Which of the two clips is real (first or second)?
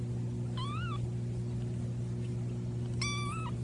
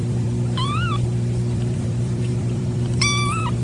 first